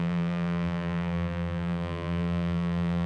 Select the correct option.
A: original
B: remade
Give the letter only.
B